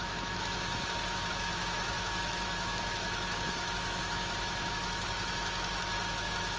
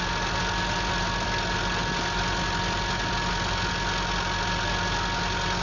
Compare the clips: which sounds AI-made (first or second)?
first